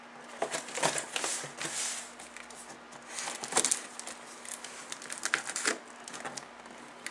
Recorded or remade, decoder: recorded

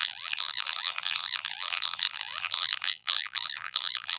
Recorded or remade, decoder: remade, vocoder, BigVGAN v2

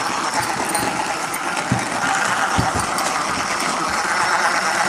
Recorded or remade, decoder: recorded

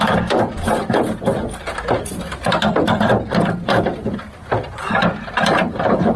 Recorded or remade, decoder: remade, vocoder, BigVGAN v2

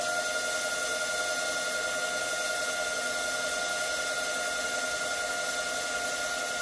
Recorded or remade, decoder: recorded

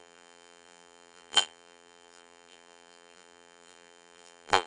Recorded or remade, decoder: remade, vocoder, BigVGAN v2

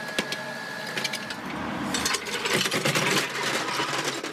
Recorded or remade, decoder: recorded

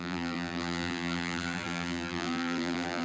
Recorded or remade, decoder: remade, vocoder, BigVGAN v2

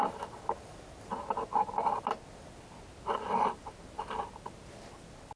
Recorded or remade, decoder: recorded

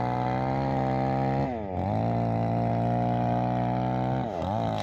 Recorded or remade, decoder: recorded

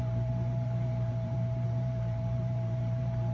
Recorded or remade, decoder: remade, vocoder, BigVGAN v2